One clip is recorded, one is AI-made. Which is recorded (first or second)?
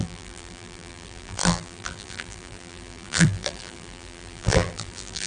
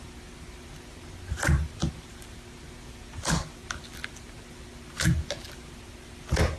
second